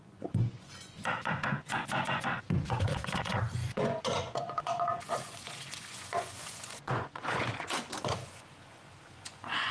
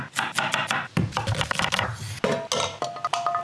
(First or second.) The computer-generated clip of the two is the first